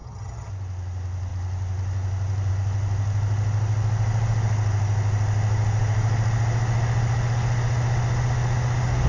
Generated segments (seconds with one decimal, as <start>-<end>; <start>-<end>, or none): 0.0-0.5